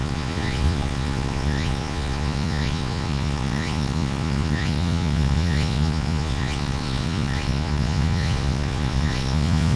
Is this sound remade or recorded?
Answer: remade